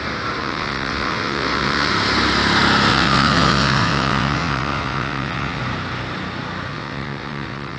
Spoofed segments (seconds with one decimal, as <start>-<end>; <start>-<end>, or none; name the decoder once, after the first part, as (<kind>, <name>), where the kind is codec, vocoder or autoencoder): 0.4-1.9 (vocoder, WaveNeXt); 2.9-5.6; 6.7-7.8